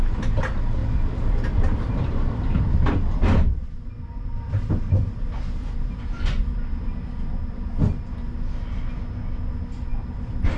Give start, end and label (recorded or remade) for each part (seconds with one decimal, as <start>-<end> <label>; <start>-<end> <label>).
0.0-0.8 recorded; 0.8-6.1 remade; 6.1-10.6 recorded